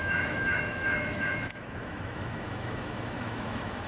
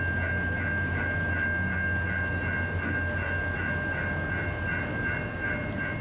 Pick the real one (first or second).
second